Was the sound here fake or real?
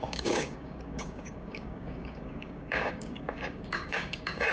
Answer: fake